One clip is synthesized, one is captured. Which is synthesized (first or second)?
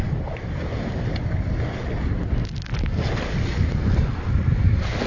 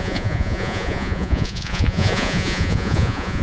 second